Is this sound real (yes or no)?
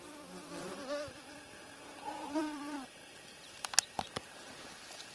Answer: no